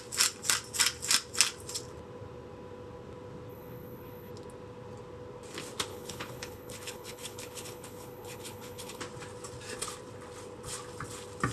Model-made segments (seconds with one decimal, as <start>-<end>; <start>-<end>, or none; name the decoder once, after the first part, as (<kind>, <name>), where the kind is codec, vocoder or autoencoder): 3.5-4.3 (codec, HILCodec); 5.9-9.0